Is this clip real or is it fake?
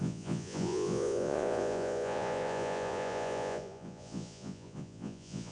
fake